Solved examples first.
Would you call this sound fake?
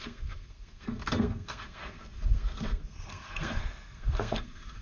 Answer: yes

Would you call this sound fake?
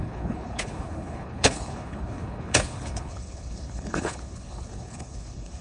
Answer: yes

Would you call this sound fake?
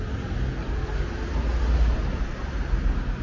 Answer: no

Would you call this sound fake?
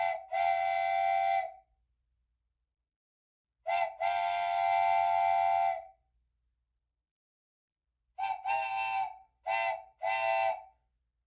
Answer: no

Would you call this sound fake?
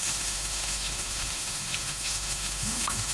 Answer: yes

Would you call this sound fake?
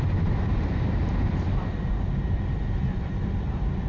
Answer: yes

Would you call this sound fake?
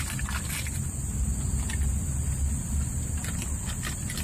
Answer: no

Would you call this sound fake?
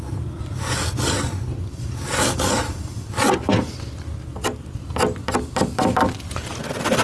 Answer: no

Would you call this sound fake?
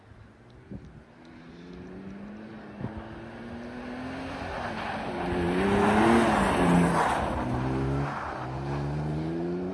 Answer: no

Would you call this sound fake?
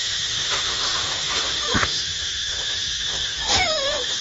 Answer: yes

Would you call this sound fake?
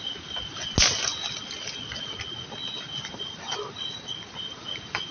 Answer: no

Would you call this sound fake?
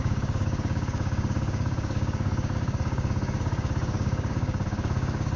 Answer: yes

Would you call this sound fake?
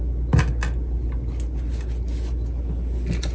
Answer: no